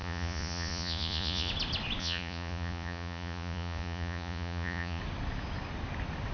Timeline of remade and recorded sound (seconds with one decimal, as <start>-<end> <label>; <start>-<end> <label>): 0.0-1.5 remade; 1.5-2.0 recorded; 2.0-5.0 remade; 5.0-6.3 recorded